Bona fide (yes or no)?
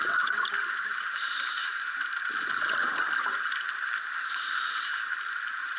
no